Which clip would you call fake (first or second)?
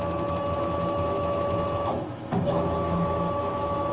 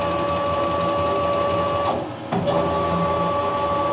first